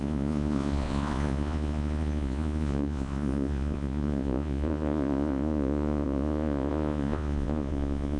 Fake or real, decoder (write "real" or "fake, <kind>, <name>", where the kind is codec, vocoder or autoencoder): fake, vocoder, Vocos